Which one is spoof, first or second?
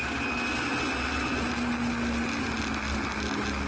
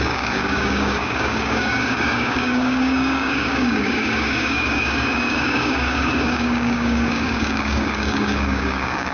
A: second